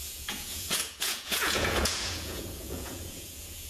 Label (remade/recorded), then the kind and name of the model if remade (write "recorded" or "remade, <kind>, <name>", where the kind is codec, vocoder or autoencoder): remade, vocoder, Vocos